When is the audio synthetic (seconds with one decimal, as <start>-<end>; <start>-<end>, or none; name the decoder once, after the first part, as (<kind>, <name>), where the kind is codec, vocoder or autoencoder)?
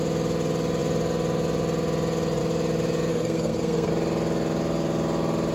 3.1-3.9 (codec, SNAC)